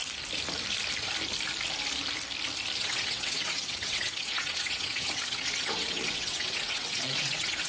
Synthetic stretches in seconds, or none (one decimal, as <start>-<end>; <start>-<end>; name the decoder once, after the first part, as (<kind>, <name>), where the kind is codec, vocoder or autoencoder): 2.8-7.7 (vocoder, WaveNeXt)